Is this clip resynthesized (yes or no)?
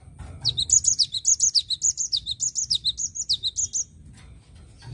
no